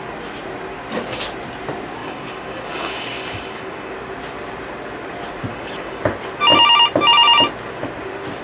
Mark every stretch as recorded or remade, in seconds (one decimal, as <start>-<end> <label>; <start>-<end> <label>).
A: 0.0-2.0 recorded; 2.0-3.9 remade; 3.9-5.5 recorded; 5.5-6.0 remade; 6.0-8.4 recorded